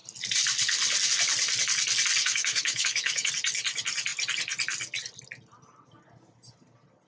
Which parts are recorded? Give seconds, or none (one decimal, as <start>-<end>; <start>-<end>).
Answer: 0.0-2.2; 3.3-7.1